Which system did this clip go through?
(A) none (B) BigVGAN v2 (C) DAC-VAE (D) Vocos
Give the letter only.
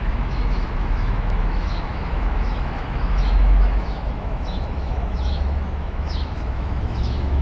C